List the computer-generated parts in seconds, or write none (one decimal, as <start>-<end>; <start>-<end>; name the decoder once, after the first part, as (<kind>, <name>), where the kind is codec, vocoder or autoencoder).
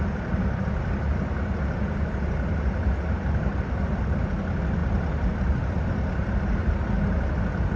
none